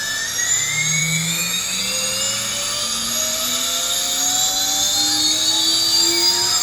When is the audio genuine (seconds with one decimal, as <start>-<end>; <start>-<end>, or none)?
0.0-1.0; 1.8-6.6